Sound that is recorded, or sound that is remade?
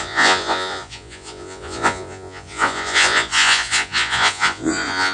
remade